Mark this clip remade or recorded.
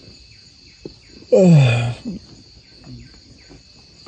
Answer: recorded